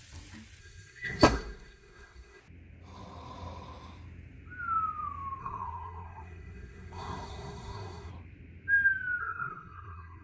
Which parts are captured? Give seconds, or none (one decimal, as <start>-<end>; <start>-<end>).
0.0-0.6; 2.4-5.4; 8.1-9.2